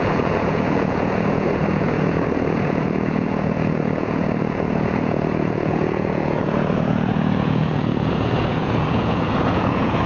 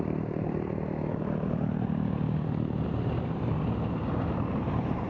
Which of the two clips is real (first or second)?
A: second